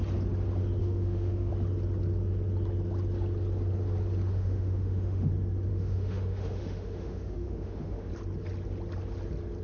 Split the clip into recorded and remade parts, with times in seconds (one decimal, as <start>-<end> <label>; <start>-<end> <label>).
0.0-0.8 recorded; 0.8-1.5 remade; 1.5-4.3 recorded; 4.3-5.3 remade; 5.3-5.7 recorded; 5.7-8.1 remade; 8.1-9.6 recorded